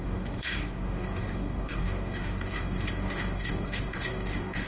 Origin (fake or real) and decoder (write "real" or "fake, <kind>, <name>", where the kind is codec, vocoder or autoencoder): fake, codec, DAC